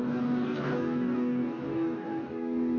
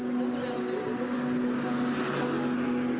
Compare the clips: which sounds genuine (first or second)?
second